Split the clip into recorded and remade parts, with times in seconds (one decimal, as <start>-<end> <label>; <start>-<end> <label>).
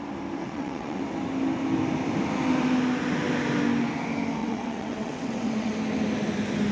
0.0-0.4 recorded; 0.4-1.0 remade; 1.0-4.4 recorded; 4.4-5.7 remade; 5.7-6.7 recorded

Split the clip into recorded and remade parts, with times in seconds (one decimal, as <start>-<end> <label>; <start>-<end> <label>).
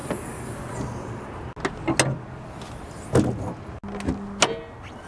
0.0-5.1 recorded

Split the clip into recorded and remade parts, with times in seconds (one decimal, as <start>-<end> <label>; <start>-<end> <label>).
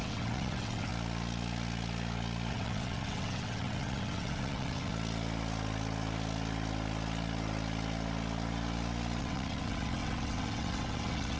0.0-0.9 remade; 0.9-2.5 recorded; 2.5-4.9 remade; 4.9-9.2 recorded; 9.2-11.4 remade